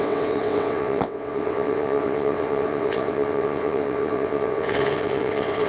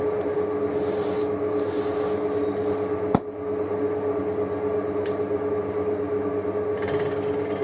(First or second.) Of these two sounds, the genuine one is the second